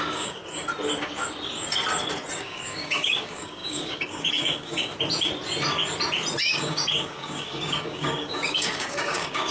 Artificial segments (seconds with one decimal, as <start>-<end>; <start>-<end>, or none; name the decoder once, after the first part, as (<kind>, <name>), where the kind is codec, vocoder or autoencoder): 0.0-0.4 (codec, DAC); 2.4-4.9; 6.4-9.5